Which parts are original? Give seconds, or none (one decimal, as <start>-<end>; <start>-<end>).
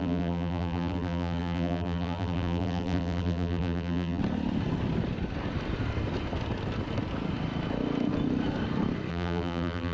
4.2-9.1